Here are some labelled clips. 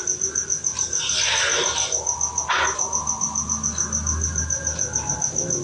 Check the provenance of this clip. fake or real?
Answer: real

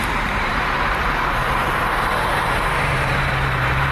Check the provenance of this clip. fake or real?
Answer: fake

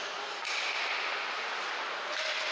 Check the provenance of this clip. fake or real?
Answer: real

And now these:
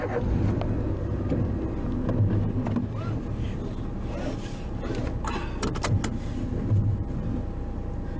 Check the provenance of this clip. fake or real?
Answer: real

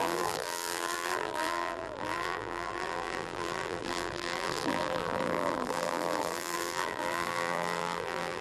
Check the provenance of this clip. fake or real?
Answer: fake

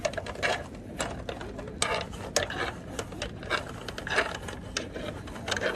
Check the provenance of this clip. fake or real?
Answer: real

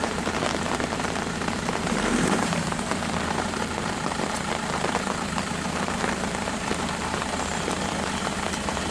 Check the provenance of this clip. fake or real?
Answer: fake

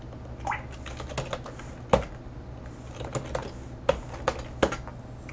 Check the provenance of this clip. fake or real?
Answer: real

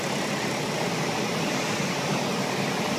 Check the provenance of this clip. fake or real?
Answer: real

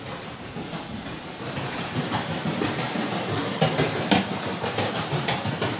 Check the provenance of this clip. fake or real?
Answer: fake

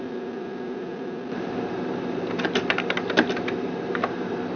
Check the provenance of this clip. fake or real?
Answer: fake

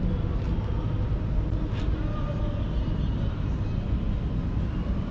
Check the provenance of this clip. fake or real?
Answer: real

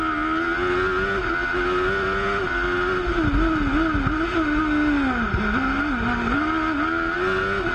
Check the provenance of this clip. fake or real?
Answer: real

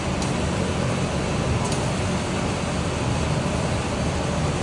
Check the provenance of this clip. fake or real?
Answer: real